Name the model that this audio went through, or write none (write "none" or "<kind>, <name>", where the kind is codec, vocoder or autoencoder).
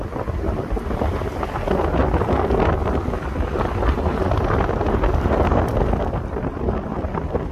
none